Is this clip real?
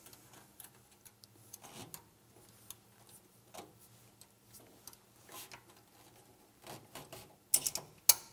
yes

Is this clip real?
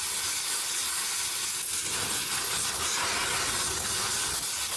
yes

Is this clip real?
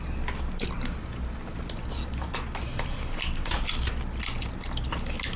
yes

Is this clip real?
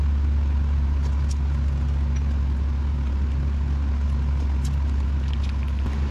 yes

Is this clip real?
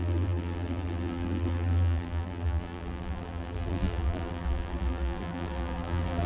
no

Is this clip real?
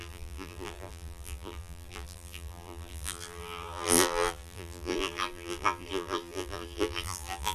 no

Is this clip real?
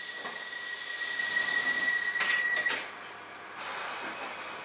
yes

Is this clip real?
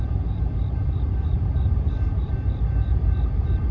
no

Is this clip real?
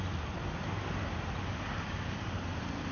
yes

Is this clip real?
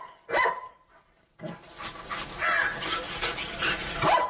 yes